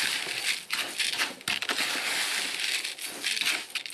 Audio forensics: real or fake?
real